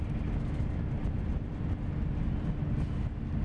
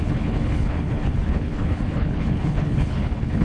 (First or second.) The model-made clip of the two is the second